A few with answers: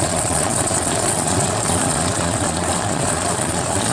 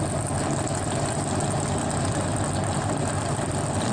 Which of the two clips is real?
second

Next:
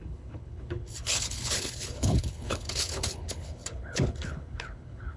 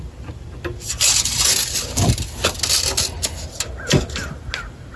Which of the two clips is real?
second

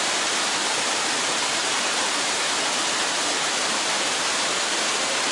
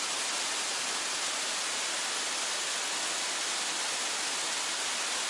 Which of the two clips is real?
second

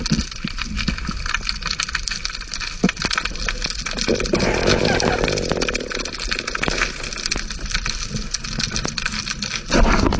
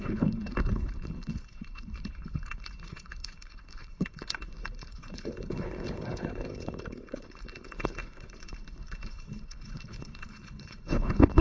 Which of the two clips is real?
first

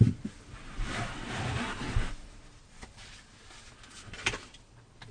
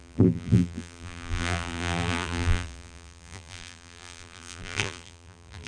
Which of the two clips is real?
first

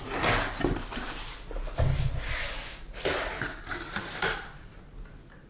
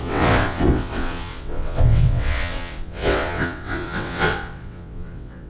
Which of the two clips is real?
first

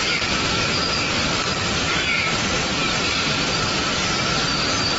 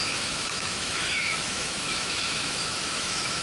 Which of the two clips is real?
first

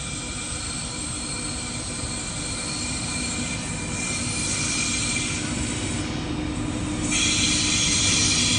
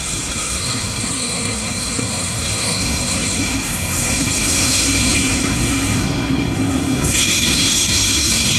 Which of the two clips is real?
first